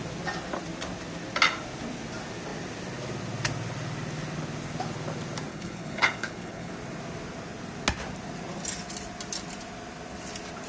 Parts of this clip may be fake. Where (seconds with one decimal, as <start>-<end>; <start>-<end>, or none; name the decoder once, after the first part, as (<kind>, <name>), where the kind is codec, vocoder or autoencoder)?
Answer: 5.5-6.7 (codec, HILCodec)